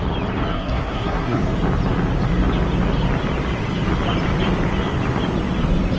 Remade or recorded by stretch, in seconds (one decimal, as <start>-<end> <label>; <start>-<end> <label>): 0.0-0.5 recorded; 0.5-1.4 remade; 1.4-6.0 recorded